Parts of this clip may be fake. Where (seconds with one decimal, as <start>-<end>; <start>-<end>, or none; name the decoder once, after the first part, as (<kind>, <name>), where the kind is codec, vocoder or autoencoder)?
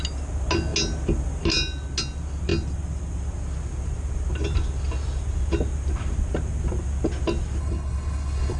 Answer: 7.6-8.6 (codec, HILCodec)